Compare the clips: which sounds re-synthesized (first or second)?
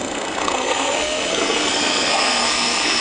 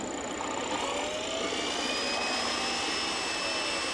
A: first